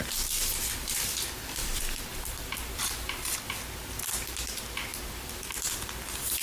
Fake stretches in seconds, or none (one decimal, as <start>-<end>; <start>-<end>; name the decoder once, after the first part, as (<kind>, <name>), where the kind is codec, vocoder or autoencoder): 1.6-3.4 (vocoder, BigVGAN v2); 4.9-6.4